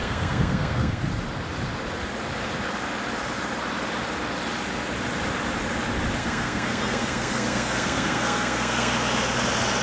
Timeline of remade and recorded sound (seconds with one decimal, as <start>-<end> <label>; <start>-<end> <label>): 0.0-1.1 remade; 1.1-6.2 recorded; 6.2-8.9 remade; 8.9-9.8 recorded